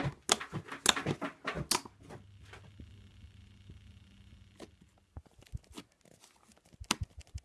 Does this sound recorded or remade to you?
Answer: recorded